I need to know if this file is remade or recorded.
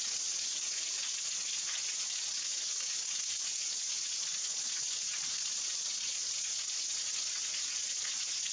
remade